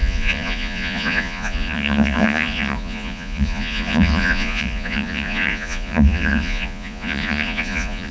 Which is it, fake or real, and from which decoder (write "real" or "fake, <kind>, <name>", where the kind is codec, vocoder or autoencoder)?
fake, vocoder, Vocos